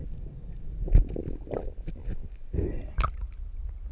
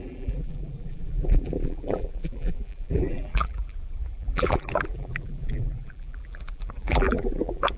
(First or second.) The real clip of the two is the first